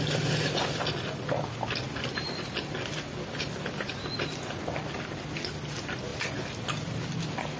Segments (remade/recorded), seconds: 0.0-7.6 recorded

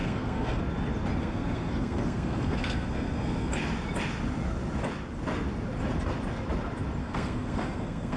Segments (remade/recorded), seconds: 0.0-0.6 remade; 0.6-1.2 recorded; 1.2-3.5 remade; 3.5-7.0 recorded; 7.0-8.2 remade

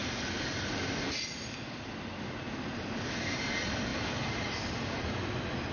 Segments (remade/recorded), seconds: 0.0-5.7 recorded